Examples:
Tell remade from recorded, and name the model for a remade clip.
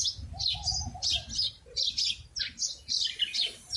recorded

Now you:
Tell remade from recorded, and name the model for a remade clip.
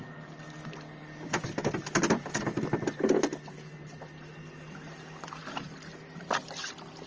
recorded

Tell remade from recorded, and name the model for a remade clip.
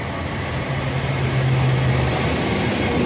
recorded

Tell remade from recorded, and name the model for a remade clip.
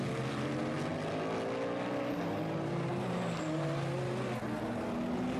recorded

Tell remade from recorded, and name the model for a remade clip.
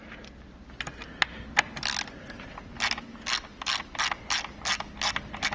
recorded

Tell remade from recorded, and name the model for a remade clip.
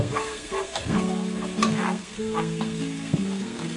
remade, codec, SNAC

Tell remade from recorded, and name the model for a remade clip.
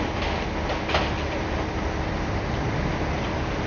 recorded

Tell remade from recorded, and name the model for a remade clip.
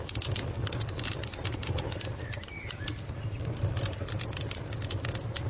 recorded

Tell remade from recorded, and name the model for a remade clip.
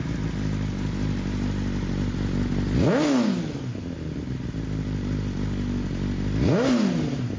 recorded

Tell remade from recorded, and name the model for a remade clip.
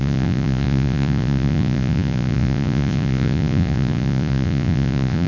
remade, vocoder, Vocos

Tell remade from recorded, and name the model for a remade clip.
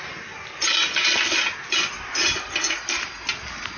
recorded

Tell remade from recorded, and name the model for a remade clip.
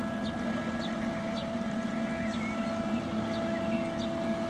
recorded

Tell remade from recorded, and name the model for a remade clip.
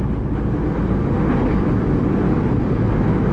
recorded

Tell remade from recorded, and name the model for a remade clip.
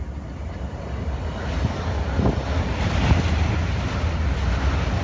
recorded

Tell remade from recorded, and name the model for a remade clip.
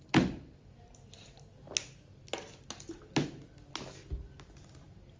recorded